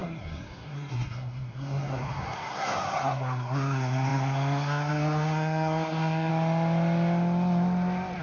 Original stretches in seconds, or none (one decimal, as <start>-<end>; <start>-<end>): 6.3-8.2